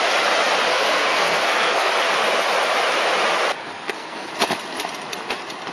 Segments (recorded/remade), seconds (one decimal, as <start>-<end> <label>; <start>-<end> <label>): 0.0-0.7 recorded; 0.7-1.9 remade; 1.9-3.6 recorded; 3.6-4.3 remade; 4.3-5.7 recorded